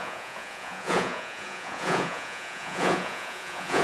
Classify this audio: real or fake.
fake